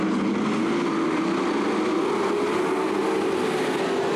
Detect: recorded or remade recorded